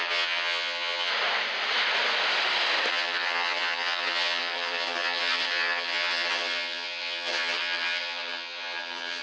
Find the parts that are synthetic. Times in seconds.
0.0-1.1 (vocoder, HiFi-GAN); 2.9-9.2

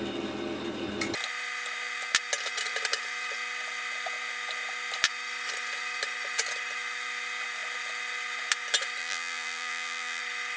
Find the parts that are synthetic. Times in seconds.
9.0-10.2 (vocoder, BigVGAN v2)

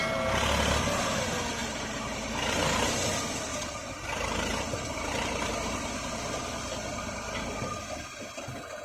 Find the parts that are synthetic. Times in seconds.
1.6-2.3 (vocoder, BigVGAN v2); 3.5-5.5

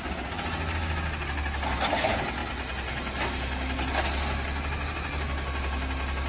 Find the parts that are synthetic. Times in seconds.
none

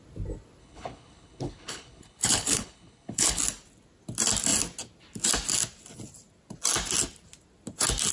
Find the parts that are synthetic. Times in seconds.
0.6-3.4 (codec, HILCodec)